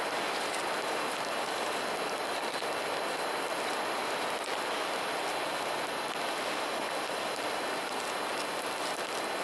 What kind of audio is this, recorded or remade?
recorded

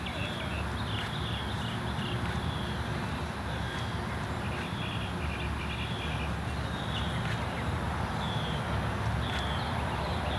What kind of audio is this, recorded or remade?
recorded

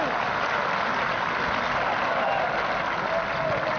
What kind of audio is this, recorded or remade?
recorded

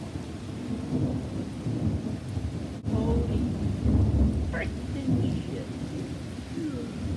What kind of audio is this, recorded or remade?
recorded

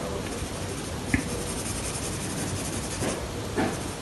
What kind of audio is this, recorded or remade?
recorded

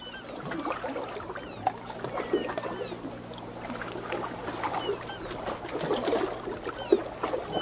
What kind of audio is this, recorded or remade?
recorded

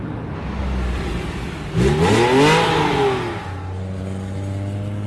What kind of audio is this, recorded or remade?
recorded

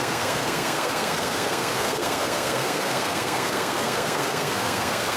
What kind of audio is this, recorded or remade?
remade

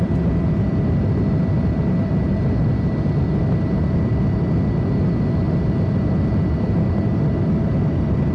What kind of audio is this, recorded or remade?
recorded